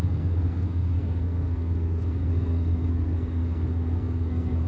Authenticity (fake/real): fake